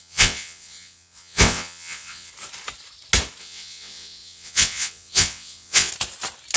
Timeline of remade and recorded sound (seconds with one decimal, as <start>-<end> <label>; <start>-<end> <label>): 0.0-2.3 remade; 2.3-3.4 recorded; 3.4-5.9 remade; 5.9-6.6 recorded